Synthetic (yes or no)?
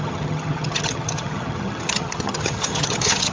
yes